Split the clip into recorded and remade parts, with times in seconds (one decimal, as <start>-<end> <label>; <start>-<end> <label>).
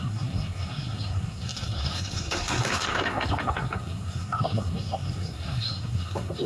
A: 0.0-6.5 remade